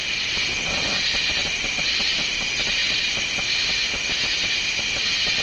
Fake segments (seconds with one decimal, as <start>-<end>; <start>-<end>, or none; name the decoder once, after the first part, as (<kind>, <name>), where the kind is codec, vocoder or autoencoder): none